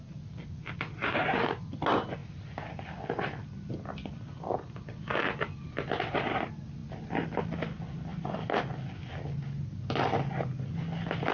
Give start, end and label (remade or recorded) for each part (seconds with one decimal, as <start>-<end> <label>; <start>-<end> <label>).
0.0-11.3 recorded